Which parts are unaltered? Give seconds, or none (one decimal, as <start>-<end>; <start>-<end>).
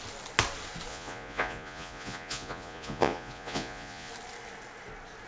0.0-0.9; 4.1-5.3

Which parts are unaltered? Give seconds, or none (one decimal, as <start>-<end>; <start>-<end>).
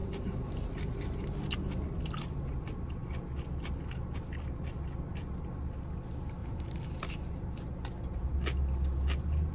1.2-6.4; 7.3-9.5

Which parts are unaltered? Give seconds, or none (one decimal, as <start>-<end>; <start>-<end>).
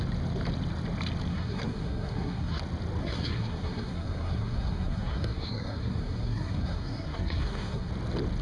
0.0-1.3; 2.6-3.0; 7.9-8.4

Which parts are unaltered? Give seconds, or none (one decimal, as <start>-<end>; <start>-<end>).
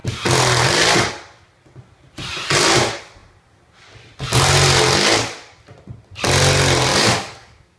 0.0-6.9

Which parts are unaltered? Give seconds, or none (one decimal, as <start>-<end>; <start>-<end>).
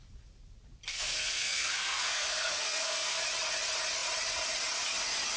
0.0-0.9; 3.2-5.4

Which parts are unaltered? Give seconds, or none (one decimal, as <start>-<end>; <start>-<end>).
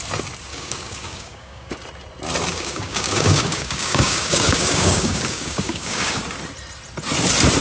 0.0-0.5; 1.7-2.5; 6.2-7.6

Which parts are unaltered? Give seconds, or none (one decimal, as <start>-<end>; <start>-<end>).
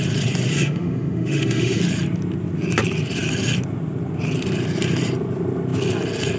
0.0-0.5; 1.8-6.4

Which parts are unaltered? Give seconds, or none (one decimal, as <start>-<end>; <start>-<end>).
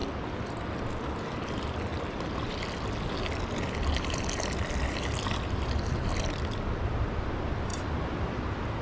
0.0-8.8